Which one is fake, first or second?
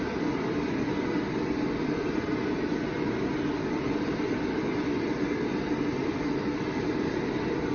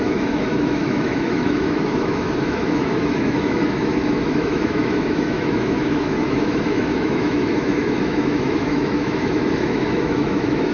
second